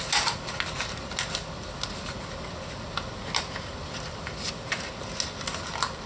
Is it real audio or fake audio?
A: real